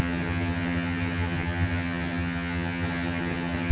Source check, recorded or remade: remade